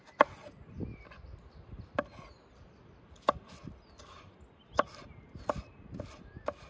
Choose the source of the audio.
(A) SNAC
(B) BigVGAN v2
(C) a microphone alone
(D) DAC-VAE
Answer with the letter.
C